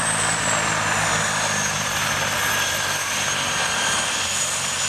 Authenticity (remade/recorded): recorded